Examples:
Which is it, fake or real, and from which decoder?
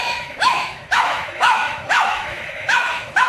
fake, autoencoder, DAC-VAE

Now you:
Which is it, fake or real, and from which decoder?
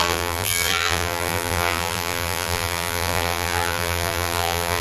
fake, vocoder, BigVGAN v2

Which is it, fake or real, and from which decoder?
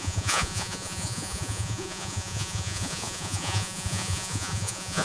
fake, vocoder, Vocos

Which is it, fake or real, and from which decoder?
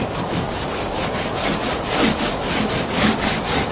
fake, codec, DAC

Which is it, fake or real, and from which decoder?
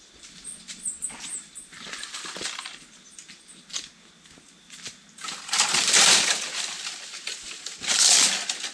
real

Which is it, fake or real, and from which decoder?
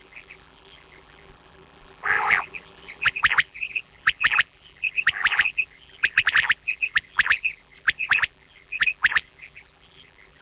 fake, vocoder, BigVGAN v2